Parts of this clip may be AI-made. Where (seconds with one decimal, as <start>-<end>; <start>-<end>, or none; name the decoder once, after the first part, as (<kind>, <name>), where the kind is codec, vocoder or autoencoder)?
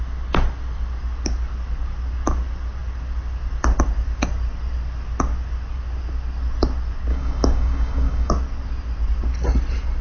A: 7.1-8.3 (codec, DAC)